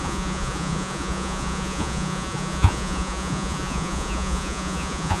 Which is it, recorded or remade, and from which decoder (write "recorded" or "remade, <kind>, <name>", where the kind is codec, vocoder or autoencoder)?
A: remade, vocoder, Vocos